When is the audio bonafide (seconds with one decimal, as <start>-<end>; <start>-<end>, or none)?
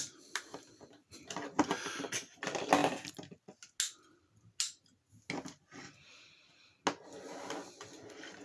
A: 0.0-8.4